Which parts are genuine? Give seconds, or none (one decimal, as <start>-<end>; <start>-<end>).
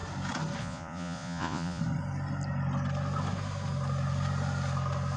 0.0-0.6; 1.8-5.2